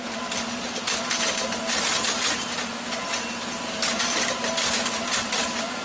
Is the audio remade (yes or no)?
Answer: no